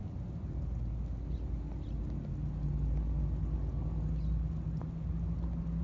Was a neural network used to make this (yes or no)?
no